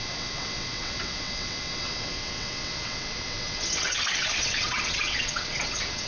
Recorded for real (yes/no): no